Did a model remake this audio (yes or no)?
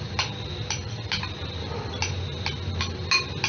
no